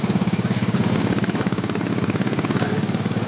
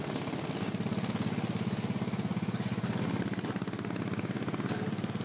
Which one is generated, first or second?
first